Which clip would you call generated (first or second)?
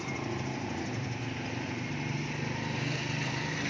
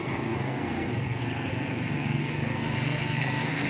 second